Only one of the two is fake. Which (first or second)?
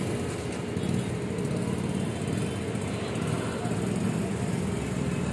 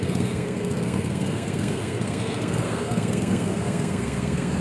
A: second